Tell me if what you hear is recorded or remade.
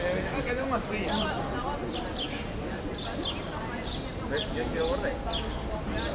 recorded